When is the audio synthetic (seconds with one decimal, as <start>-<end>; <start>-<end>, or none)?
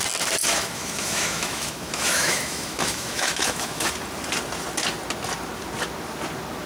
0.4-3.9